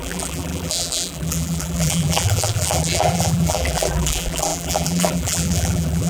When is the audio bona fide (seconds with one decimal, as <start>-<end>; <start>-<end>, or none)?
none